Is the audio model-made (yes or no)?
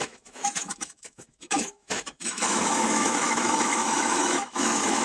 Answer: yes